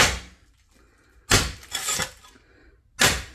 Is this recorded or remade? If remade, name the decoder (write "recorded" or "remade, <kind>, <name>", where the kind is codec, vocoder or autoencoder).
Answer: recorded